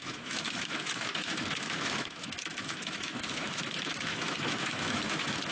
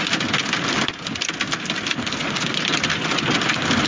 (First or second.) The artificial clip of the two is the first